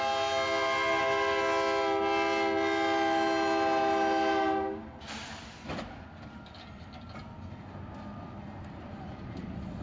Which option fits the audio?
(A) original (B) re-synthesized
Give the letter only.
A